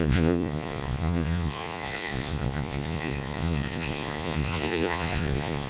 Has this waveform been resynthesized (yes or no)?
yes